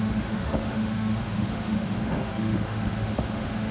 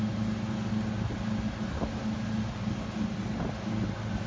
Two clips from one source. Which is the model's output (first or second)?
first